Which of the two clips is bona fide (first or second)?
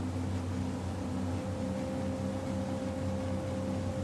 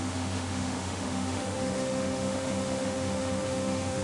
first